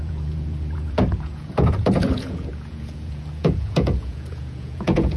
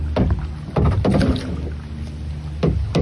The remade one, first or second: first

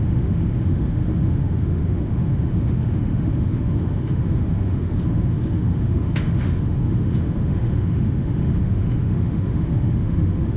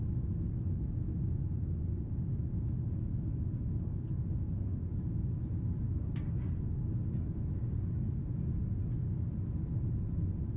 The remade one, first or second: first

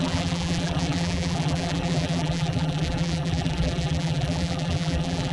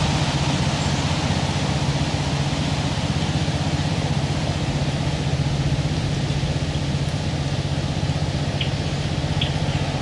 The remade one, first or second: first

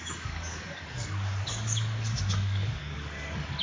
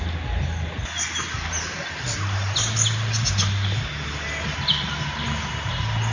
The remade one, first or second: first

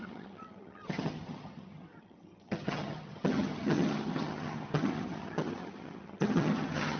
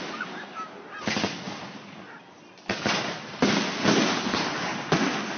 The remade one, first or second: first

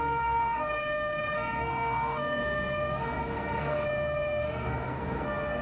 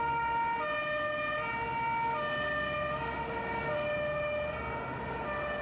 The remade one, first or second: first